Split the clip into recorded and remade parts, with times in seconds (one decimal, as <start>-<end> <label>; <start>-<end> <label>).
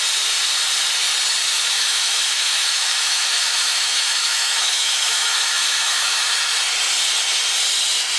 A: 0.0-1.4 recorded; 1.4-6.2 remade; 6.2-8.2 recorded